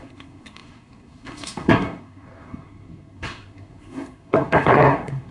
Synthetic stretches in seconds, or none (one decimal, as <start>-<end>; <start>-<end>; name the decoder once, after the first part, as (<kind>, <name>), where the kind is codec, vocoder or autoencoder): 0.0-5.3 (codec, SNAC)